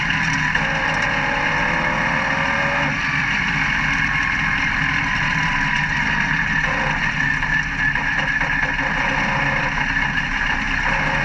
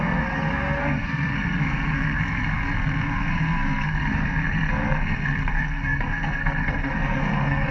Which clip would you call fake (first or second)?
second